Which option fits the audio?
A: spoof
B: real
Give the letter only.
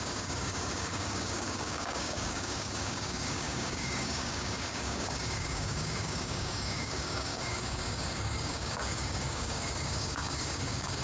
A